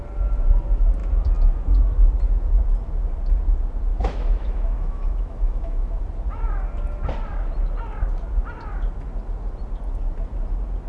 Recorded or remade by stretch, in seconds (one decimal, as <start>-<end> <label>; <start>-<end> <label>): 0.0-3.9 recorded; 3.9-6.0 remade; 6.0-10.9 recorded